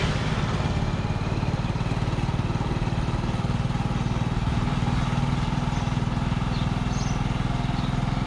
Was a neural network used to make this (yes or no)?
no